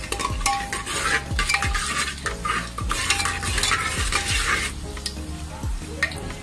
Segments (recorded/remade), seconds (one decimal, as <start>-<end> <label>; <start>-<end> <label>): 0.0-6.4 recorded

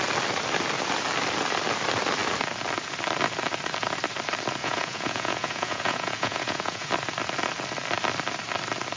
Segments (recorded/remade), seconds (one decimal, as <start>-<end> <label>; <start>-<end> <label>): 0.0-4.6 recorded; 4.6-6.9 remade; 6.9-9.0 recorded

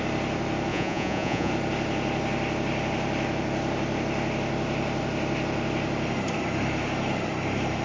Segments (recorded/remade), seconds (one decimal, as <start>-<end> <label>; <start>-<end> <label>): 0.0-0.7 recorded; 0.7-1.5 remade; 1.5-7.8 recorded

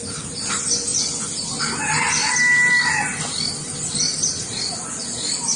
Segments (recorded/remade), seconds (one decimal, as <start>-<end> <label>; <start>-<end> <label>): 0.0-5.6 recorded

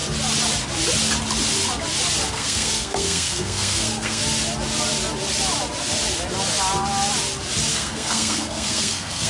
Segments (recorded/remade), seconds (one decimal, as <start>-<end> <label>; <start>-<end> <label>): 0.0-2.3 recorded; 2.3-4.2 remade; 4.2-7.7 recorded; 7.7-9.3 remade

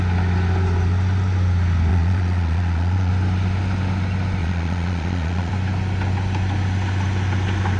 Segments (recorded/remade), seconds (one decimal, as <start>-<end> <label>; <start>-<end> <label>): 0.0-1.9 recorded; 1.9-3.1 remade; 3.1-4.4 recorded; 4.4-5.5 remade; 5.5-7.8 recorded